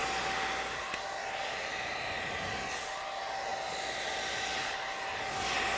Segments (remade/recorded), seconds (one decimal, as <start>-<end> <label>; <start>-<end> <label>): 0.0-5.8 recorded

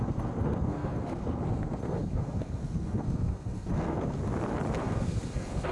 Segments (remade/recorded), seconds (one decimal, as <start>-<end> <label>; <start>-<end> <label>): 0.0-4.2 remade; 4.2-4.8 recorded; 4.8-5.7 remade

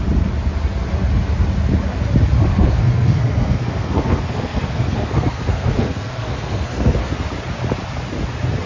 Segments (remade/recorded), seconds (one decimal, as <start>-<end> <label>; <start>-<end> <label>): 0.0-2.5 recorded; 2.5-7.1 remade; 7.1-8.7 recorded

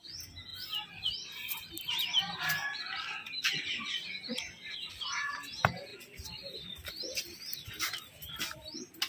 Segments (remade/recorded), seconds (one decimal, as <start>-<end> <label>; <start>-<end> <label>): 0.0-9.1 recorded